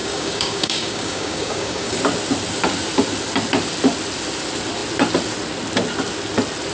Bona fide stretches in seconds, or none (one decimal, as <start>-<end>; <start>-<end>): 2.0-6.7